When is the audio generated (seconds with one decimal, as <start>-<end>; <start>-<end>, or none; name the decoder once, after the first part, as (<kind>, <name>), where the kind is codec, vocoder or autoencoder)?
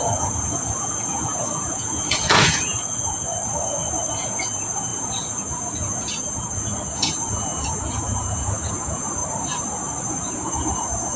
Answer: 0.0-3.3 (vocoder, Vocos); 4.1-9.2; 10.1-11.2